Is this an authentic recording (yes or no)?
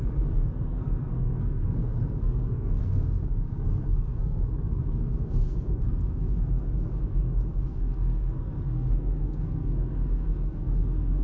no